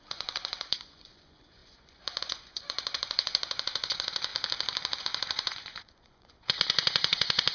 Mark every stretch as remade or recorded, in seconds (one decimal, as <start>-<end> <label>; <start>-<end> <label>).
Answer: 0.0-4.3 remade; 4.3-5.0 recorded; 5.0-7.5 remade